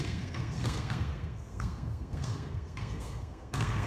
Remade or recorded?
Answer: remade